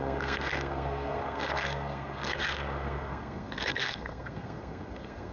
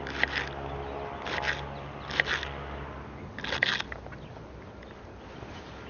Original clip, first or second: second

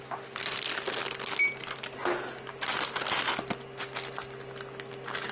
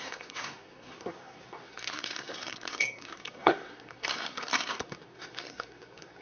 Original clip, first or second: first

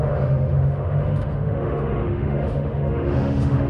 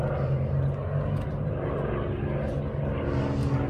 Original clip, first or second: second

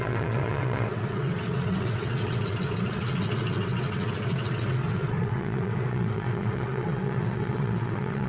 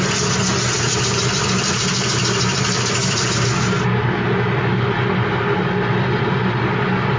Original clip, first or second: second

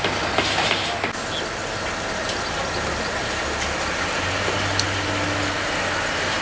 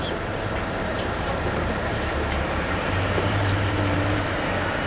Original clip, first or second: first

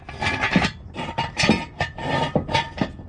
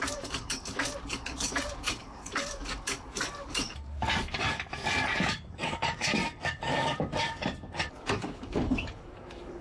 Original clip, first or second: first